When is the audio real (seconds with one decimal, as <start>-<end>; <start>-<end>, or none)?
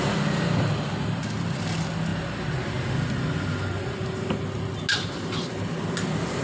0.0-6.4